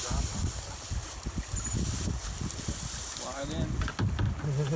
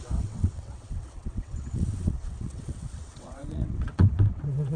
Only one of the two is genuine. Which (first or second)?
first